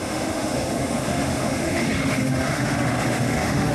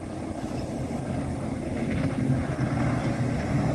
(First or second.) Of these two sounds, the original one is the second